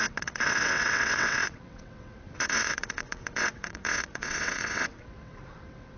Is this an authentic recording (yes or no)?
no